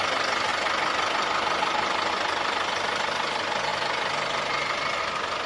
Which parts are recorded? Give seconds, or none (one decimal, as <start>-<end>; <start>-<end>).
0.0-5.5